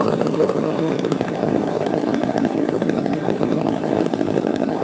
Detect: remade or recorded remade